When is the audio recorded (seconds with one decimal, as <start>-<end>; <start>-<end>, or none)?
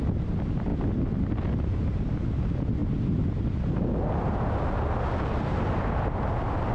0.0-6.7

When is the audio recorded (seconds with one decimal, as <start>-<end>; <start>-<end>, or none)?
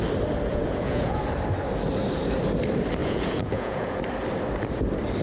0.0-0.5; 1.2-3.0; 4.0-5.2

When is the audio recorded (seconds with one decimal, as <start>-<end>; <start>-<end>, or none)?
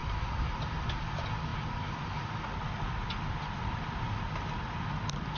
0.0-5.4